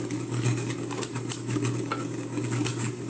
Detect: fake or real fake